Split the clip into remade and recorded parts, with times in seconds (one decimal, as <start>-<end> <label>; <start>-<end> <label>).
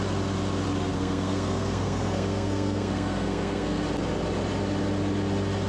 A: 0.0-0.9 recorded; 0.9-3.8 remade; 3.8-5.7 recorded